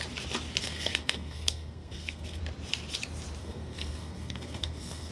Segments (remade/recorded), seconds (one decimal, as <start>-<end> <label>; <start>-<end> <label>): 0.0-0.6 recorded; 0.6-2.4 remade; 2.4-3.4 recorded; 3.4-5.1 remade

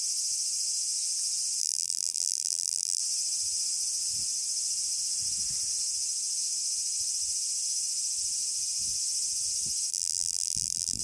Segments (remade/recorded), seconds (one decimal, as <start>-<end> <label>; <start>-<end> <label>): 0.0-1.6 recorded; 1.6-3.0 remade; 3.0-9.9 recorded; 9.9-11.0 remade

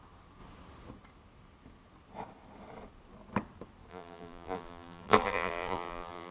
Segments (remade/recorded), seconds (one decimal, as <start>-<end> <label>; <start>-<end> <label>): 0.0-3.9 recorded; 3.9-6.3 remade